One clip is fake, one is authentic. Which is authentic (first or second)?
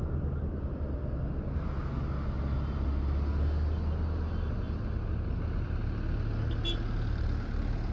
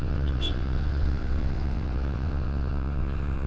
first